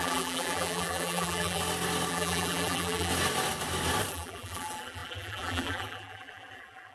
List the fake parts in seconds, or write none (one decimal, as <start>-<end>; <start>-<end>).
0.0-1.6; 2.1-3.1; 4.1-6.9